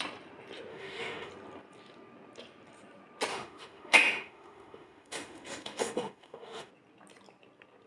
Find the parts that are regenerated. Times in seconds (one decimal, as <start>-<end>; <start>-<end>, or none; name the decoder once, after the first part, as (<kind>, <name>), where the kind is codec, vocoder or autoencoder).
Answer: 0.7-1.3 (autoencoder, DAC-VAE); 3.3-6.7